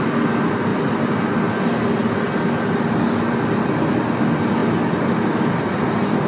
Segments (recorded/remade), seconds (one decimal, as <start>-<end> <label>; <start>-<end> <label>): 0.0-6.3 recorded